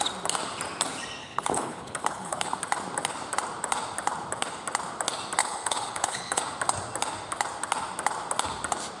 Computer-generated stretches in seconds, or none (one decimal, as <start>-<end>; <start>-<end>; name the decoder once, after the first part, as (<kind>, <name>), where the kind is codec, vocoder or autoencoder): 1.2-2.5 (codec, HILCodec); 5.4-6.4